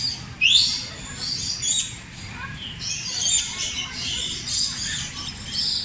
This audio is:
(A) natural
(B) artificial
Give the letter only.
A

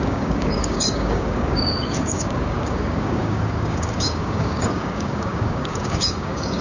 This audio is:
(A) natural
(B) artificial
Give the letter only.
B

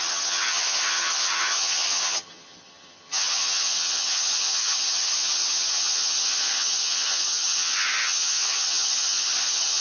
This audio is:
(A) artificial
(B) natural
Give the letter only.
A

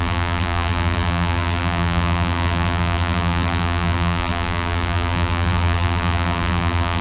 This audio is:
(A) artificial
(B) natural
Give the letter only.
A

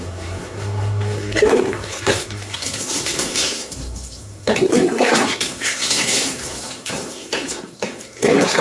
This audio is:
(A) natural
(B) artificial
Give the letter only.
B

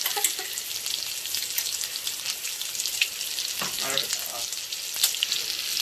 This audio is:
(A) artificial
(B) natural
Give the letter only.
B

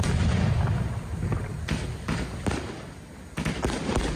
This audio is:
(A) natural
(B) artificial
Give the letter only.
B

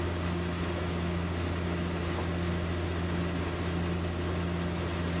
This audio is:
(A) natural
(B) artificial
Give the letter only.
A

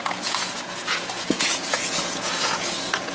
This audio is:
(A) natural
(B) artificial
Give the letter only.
B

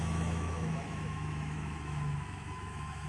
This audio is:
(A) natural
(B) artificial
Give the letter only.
B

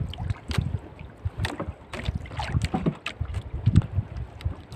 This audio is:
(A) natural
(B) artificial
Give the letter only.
A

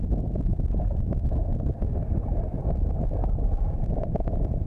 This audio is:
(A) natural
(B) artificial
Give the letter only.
A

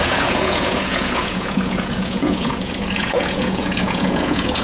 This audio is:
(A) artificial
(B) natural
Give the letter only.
A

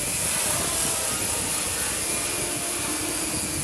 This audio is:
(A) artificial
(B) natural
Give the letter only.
B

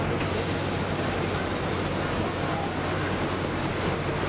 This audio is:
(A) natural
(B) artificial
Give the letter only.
A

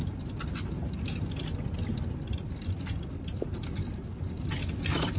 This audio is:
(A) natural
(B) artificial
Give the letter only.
A